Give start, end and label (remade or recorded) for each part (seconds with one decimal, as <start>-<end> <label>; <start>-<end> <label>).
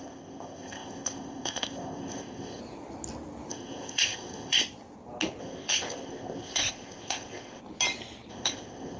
0.0-2.6 remade; 2.6-3.5 recorded; 3.5-4.6 remade; 4.6-5.4 recorded; 5.4-7.6 remade; 7.6-8.3 recorded; 8.3-9.0 remade